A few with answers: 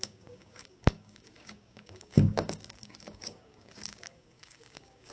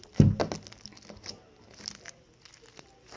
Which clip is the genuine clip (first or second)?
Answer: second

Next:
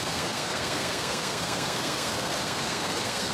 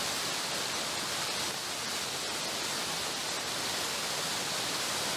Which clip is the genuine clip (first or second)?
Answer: second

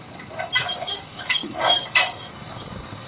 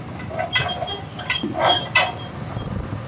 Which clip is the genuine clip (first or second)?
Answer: second